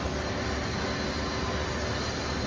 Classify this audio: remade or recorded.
recorded